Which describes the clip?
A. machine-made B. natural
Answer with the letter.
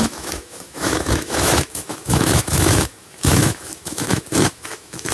A